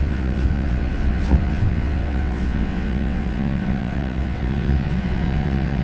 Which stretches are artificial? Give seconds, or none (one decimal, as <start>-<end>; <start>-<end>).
0.0-5.8